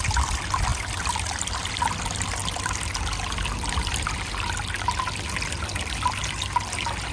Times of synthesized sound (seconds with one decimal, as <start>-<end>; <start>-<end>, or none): none